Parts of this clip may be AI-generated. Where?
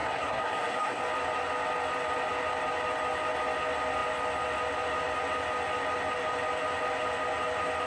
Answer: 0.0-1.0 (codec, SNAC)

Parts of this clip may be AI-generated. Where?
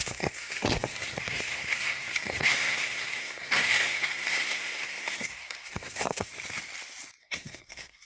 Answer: 0.0-6.3 (codec, SNAC); 7.2-8.0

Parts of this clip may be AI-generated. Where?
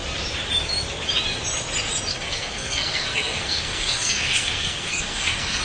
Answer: 2.1-5.6 (codec, SNAC)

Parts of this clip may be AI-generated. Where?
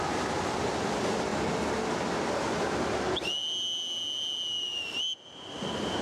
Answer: none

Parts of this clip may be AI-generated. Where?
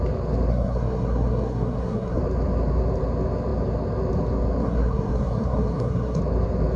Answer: 0.5-2.2 (codec, SNAC); 4.6-6.2